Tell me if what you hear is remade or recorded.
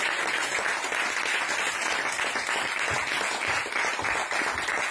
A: recorded